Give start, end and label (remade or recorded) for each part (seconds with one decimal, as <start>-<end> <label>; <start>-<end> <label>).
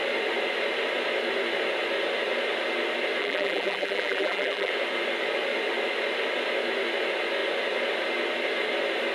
0.0-3.2 recorded; 3.2-4.7 remade; 4.7-9.1 recorded